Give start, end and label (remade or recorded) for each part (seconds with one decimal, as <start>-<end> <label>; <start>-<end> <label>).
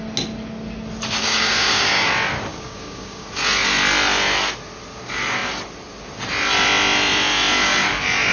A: 0.0-1.2 recorded; 1.2-2.1 remade; 2.1-2.5 recorded; 2.5-3.3 remade; 3.3-8.3 recorded